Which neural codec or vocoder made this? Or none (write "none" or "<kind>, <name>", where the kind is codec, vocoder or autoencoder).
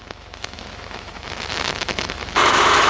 autoencoder, DAC-VAE